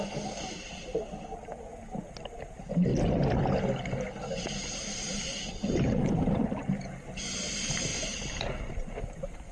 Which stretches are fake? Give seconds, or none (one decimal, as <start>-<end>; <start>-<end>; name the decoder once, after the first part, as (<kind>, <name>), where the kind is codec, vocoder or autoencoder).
0.0-1.7 (vocoder, BigVGAN v2); 2.5-2.9; 4.2-9.5